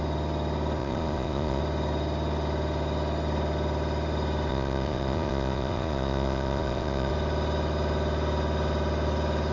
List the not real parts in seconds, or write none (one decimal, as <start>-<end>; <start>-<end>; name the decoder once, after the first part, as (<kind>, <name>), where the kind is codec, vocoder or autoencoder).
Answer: 0.8-1.6 (vocoder, Vocos); 4.5-7.1